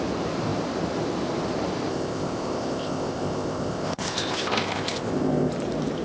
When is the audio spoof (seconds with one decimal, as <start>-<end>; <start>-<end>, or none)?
1.9-5.5